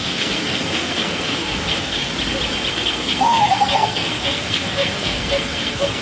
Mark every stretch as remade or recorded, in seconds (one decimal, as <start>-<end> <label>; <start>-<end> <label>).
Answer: 0.0-2.1 remade; 2.1-2.7 recorded; 2.7-6.0 remade